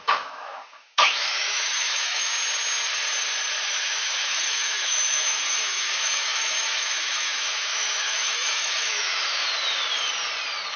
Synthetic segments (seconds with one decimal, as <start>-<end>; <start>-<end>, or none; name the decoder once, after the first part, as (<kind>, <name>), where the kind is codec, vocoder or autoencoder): 0.0-2.3 (autoencoder, DAC-VAE); 3.7-9.4